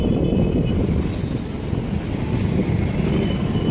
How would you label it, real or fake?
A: real